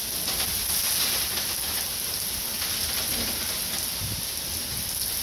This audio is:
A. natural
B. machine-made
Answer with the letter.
A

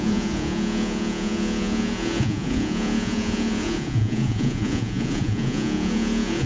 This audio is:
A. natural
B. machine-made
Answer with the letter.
B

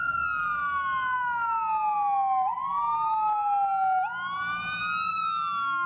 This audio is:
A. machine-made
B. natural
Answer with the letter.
B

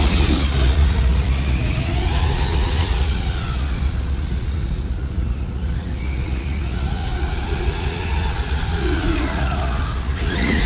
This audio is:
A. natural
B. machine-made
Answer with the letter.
B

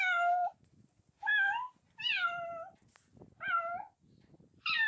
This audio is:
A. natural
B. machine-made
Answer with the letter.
A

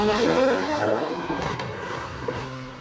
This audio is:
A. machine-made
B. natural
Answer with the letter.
A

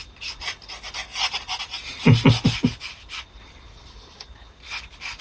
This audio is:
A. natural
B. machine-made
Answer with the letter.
A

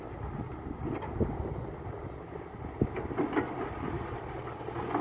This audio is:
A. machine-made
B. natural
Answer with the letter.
B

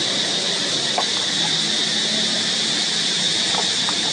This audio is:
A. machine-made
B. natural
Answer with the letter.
B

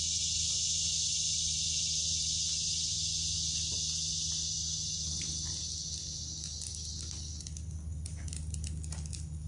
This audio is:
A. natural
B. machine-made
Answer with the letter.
A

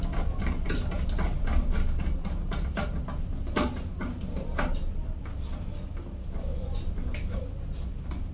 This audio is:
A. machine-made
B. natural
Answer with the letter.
B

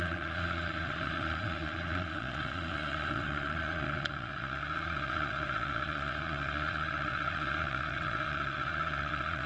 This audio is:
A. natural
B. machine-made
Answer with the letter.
B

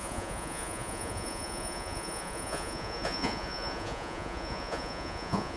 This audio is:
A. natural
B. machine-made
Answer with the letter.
B